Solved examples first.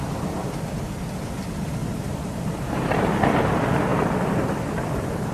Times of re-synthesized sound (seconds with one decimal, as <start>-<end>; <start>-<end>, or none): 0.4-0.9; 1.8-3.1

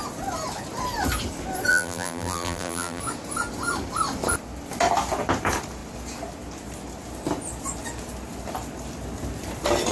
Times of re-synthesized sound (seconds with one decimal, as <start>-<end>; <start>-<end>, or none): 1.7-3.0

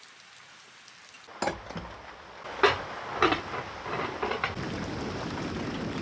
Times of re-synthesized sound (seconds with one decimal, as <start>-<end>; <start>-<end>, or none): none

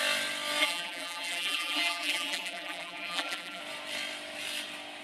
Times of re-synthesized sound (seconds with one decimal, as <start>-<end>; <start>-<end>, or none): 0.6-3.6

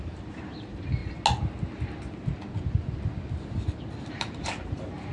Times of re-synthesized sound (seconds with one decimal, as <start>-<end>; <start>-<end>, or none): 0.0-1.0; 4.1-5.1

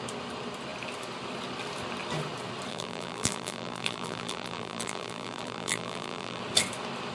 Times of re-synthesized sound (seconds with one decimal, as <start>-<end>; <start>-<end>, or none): 2.7-6.4

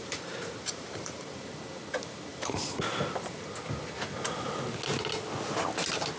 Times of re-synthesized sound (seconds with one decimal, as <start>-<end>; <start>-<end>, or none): 0.0-1.6; 2.3-2.8

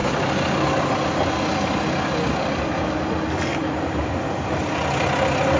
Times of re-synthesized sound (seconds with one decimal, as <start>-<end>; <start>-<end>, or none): 3.5-4.0